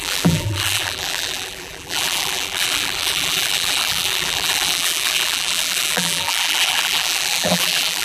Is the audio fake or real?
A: fake